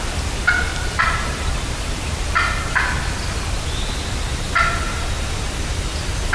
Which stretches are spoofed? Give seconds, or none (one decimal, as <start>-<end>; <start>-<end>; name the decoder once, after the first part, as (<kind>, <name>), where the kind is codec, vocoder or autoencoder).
none